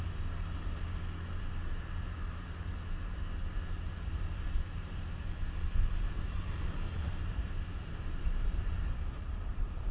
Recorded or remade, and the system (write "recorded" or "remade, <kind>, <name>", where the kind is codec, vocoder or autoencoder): remade, vocoder, BigVGAN v2